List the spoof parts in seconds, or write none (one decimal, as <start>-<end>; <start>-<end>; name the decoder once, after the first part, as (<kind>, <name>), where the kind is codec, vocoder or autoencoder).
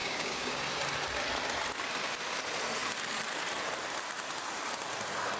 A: 0.0-0.6 (codec, DAC)